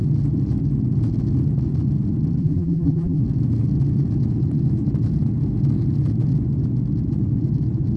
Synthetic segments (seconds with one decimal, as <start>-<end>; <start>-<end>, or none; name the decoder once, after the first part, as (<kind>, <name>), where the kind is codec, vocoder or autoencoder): 2.4-3.2 (vocoder, BigVGAN v2)